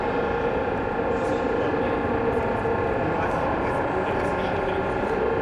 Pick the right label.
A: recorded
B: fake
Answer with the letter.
A